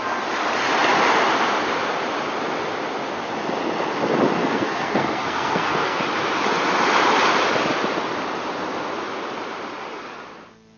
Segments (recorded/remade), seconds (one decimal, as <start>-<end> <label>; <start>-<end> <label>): 0.0-4.4 recorded; 4.4-6.0 remade; 6.0-10.8 recorded